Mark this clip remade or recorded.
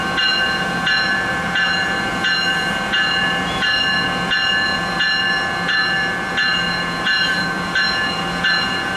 remade